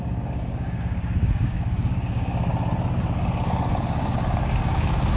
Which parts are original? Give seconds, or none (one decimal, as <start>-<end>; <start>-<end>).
2.5-3.8

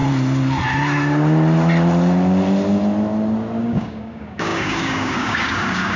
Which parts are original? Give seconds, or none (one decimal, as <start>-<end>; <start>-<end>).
0.0-3.6

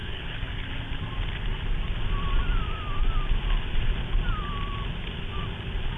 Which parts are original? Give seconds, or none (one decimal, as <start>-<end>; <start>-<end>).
0.6-6.0

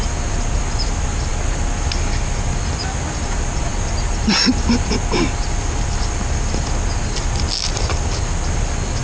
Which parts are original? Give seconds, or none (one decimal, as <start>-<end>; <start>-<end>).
0.0-9.0

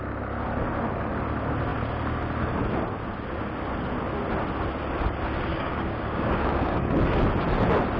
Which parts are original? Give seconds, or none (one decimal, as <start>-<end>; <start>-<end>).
0.0-5.5; 6.8-8.0

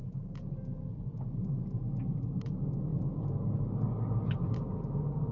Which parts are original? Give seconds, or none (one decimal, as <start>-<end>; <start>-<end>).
0.0-5.3